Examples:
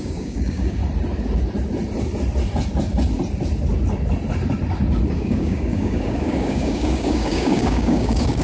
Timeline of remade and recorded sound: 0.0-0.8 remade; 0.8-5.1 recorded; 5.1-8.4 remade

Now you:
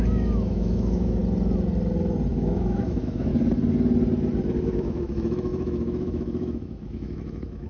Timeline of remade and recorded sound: 0.0-1.2 remade; 1.2-2.3 recorded; 2.3-3.3 remade; 3.3-4.6 recorded; 4.6-7.7 remade

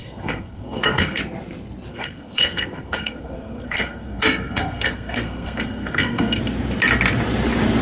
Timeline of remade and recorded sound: 0.0-1.2 remade; 1.2-1.9 recorded; 1.9-6.4 remade; 6.4-7.8 recorded

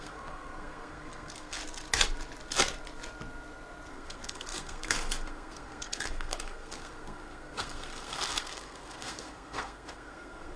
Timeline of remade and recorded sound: 0.0-1.6 remade; 1.6-3.9 recorded; 3.9-10.6 remade

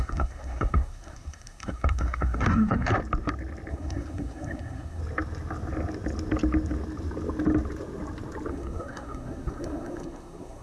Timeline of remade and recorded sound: 0.0-2.9 remade; 2.9-3.7 recorded; 3.7-5.0 remade; 5.0-8.5 recorded; 8.5-10.6 remade

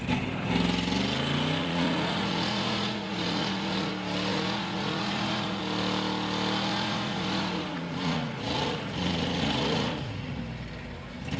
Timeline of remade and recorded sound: 0.0-1.6 recorded; 1.6-3.9 remade; 3.9-4.3 recorded; 4.3-5.6 remade; 5.6-6.7 recorded; 6.7-10.4 remade; 10.4-11.4 recorded

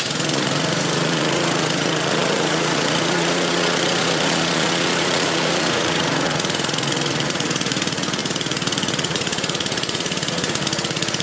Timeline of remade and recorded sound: 0.0-11.2 remade